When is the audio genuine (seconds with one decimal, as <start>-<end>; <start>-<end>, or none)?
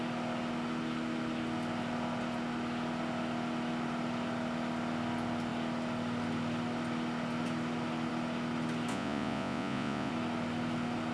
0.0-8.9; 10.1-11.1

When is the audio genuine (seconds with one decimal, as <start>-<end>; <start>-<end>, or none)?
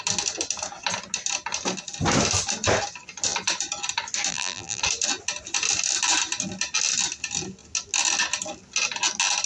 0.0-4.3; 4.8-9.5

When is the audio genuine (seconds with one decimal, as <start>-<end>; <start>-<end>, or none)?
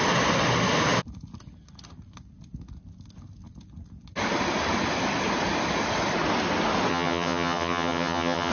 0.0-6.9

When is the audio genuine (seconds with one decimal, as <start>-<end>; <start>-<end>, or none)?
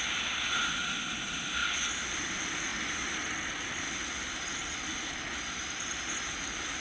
0.0-6.8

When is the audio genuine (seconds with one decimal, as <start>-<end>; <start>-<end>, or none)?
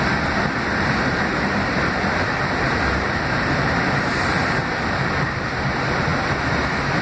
0.0-1.3; 5.5-7.0